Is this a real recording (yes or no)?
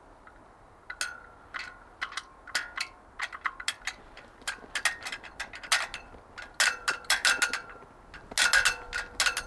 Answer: yes